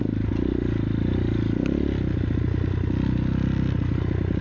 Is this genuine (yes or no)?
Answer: yes